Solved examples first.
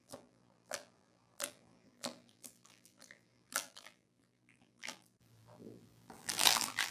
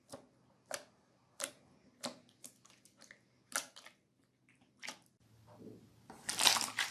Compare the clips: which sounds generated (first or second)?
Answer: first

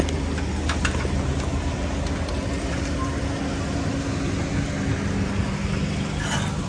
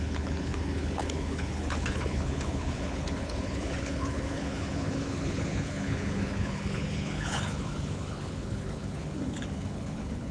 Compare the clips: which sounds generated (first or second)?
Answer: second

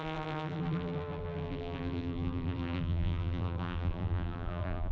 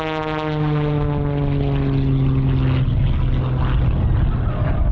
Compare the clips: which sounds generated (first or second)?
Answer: first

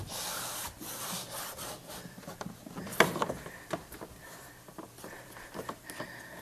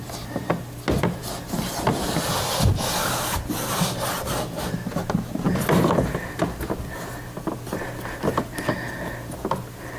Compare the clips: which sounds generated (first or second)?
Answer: first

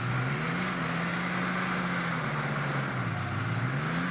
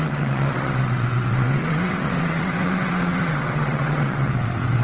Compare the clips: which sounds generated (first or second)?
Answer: second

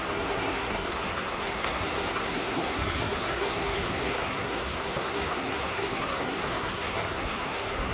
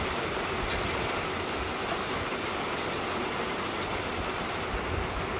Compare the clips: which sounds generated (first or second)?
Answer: first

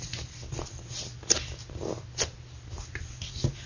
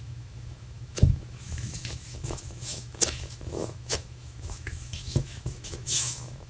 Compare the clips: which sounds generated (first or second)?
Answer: second